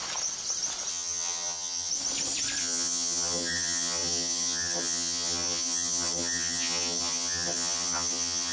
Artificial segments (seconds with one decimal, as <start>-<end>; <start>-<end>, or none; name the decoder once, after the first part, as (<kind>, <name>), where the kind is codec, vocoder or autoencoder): 0.9-1.9 (vocoder, HiFi-GAN); 2.6-8.5